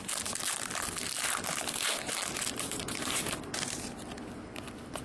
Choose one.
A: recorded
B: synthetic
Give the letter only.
A